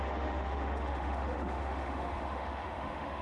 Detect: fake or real fake